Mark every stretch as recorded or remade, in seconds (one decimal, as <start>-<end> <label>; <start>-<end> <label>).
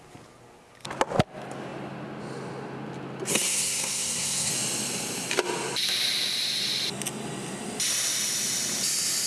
0.0-3.3 recorded; 3.3-4.5 remade; 4.5-9.3 recorded